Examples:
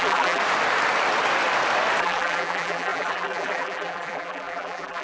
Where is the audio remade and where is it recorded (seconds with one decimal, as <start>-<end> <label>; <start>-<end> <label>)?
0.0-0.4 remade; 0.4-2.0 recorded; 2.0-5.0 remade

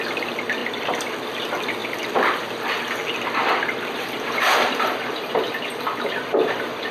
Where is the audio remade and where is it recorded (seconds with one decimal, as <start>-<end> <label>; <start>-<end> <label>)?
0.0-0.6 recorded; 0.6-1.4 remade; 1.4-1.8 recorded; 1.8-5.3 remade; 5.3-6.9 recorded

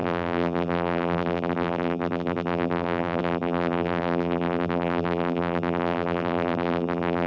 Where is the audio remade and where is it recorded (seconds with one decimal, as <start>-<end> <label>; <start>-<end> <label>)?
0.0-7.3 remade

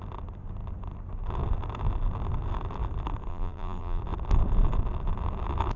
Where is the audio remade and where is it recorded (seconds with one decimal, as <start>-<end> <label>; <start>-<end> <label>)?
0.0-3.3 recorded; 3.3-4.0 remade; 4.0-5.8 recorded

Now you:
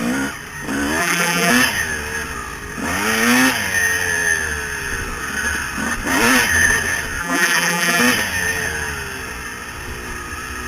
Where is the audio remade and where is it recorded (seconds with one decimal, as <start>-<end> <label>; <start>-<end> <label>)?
0.0-1.0 recorded; 1.0-1.5 remade; 1.5-7.2 recorded; 7.2-8.0 remade; 8.0-10.7 recorded

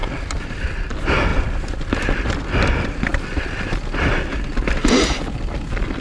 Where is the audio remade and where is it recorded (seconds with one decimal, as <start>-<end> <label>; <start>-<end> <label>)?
0.0-0.6 remade; 0.6-3.1 recorded; 3.1-4.5 remade; 4.5-6.0 recorded

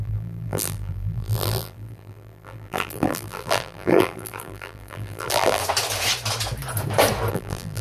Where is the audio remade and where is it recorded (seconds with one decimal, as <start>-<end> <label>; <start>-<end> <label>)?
0.0-5.6 remade; 5.6-7.3 recorded; 7.3-7.8 remade

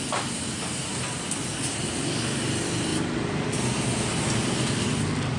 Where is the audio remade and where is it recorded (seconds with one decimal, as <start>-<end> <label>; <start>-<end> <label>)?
0.0-2.9 recorded; 2.9-4.9 remade; 4.9-5.4 recorded